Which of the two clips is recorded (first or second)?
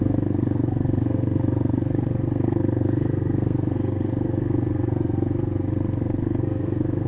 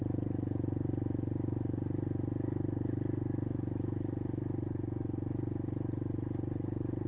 second